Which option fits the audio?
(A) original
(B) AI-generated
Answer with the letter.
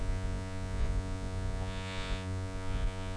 B